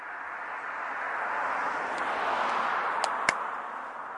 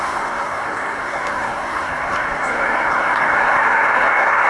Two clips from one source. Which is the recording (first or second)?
first